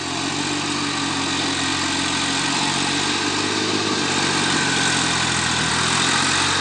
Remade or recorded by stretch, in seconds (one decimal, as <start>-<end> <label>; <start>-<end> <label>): 0.0-6.6 recorded